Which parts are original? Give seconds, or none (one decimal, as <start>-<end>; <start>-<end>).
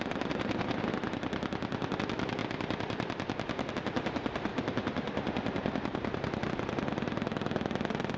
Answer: 0.0-2.4; 3.7-4.5; 6.5-8.2